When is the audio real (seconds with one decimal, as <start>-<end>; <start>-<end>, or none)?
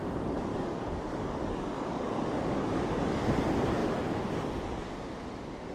0.0-0.5; 3.0-5.7